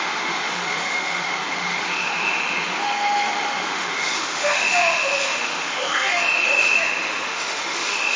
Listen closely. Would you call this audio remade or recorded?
remade